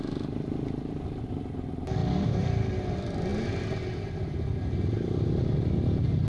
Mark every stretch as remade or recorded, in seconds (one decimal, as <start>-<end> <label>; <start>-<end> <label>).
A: 0.0-6.3 recorded

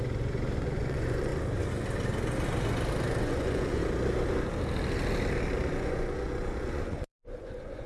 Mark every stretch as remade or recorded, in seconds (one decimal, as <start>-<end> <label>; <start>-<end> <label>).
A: 0.0-1.3 remade; 1.3-3.2 recorded; 3.2-3.8 remade; 3.8-5.7 recorded; 5.7-7.9 remade